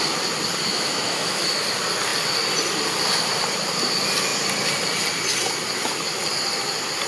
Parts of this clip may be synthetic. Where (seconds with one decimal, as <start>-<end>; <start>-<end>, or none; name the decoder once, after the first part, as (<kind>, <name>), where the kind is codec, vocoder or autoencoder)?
0.7-1.6 (autoencoder, DAC-VAE)